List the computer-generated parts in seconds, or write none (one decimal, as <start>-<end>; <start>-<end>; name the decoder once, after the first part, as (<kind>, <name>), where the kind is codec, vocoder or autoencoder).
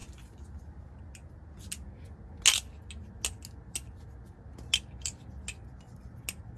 none